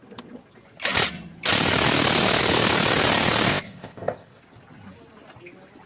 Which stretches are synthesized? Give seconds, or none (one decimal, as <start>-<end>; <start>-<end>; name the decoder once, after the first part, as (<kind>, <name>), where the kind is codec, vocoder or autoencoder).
3.5-4.4 (codec, ZipCodec)